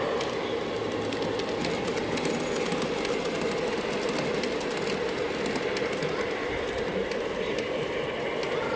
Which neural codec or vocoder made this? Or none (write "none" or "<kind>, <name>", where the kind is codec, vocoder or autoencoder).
none